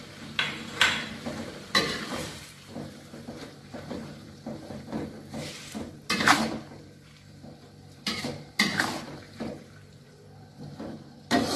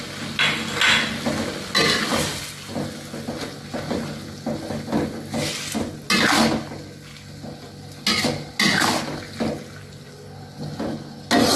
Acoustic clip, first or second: second